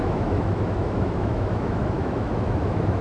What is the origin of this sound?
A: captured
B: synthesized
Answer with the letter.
B